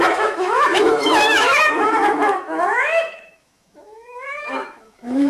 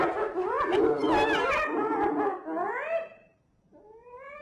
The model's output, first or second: first